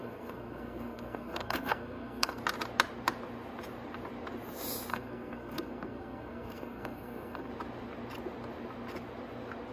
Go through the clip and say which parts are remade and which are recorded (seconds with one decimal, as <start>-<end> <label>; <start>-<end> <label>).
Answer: 0.0-2.4 remade; 2.4-4.9 recorded; 4.9-7.5 remade; 7.5-9.7 recorded